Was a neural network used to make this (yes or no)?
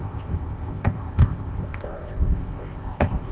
yes